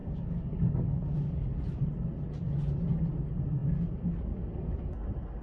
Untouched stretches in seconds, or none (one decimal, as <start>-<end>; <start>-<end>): 1.5-5.4